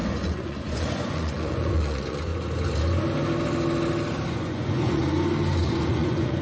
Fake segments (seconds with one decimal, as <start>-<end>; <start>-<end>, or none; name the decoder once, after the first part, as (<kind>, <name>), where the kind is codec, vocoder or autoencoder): 0.0-2.3 (vocoder, Vocos); 4.3-5.0; 5.6-6.4